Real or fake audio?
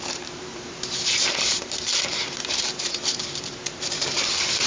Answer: fake